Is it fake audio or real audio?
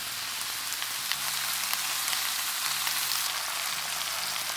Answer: real